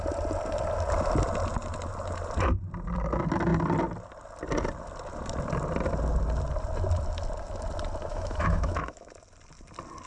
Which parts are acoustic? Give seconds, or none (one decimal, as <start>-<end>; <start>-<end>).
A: 0.0-8.1; 9.1-10.1